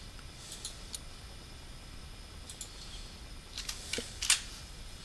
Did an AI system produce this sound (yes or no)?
no